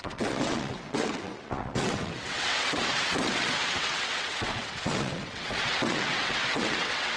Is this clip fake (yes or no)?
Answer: yes